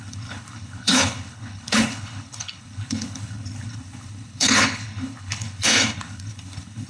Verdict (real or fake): fake